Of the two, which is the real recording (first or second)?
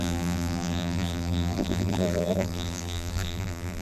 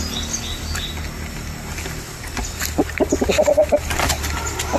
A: second